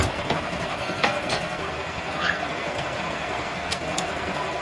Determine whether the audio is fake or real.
fake